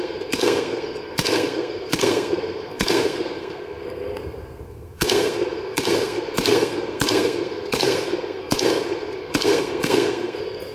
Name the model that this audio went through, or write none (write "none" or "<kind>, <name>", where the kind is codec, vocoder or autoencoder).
codec, SNAC